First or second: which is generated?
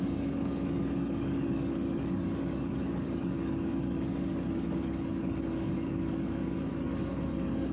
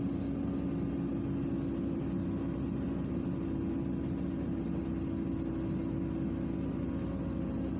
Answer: first